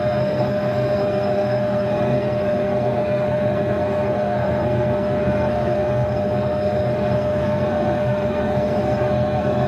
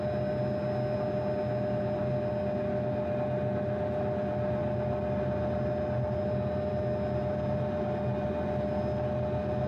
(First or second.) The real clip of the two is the second